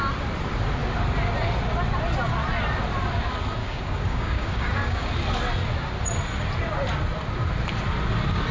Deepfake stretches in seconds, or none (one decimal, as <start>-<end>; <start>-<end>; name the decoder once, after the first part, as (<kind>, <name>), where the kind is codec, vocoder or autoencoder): 3.6-5.1 (codec, DAC)